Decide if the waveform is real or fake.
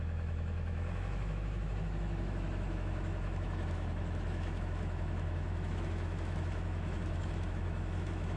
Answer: fake